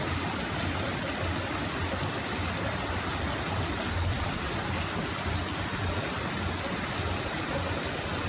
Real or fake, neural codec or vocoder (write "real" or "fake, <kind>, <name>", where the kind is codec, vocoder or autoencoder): real